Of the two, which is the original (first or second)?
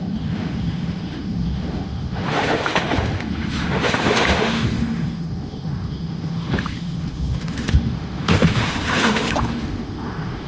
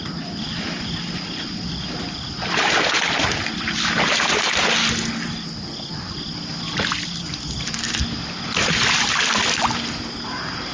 second